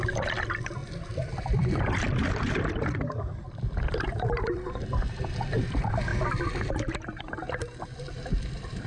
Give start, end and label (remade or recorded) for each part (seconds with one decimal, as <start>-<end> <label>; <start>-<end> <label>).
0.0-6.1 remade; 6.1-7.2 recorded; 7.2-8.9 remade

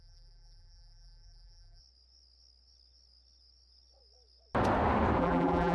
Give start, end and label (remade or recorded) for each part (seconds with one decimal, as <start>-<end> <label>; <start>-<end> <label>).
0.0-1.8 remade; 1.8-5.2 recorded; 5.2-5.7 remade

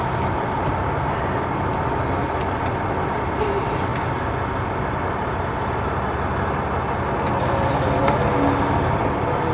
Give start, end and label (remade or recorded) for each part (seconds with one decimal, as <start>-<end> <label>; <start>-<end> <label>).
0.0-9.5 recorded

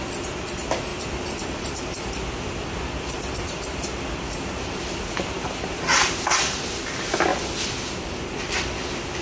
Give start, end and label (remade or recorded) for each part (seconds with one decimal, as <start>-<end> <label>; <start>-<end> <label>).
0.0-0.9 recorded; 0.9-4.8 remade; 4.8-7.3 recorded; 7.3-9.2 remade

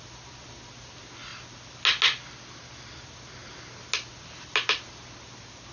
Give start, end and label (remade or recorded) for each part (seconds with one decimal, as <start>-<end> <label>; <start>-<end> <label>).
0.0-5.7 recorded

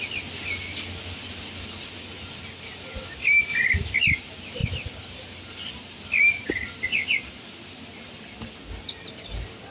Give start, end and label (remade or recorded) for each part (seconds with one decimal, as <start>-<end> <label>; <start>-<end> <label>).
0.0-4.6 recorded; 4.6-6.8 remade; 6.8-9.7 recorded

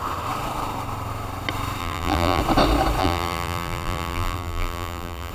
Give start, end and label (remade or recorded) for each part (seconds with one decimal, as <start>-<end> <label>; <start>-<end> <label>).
0.0-1.8 recorded; 1.8-2.4 remade; 2.4-3.0 recorded; 3.0-5.3 remade

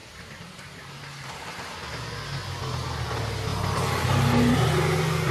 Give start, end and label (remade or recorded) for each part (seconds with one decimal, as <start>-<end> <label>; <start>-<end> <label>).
0.0-0.9 remade; 0.9-5.3 recorded